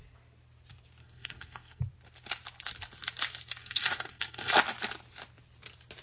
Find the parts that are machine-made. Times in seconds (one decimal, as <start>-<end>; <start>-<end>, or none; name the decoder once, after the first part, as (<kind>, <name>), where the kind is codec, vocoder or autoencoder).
1.0-1.8 (codec, SNAC); 3.6-4.5